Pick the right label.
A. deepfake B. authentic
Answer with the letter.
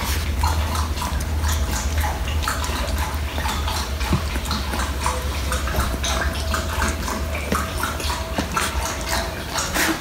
B